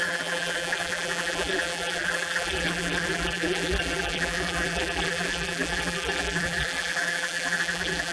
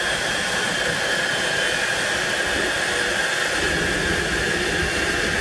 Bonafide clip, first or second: second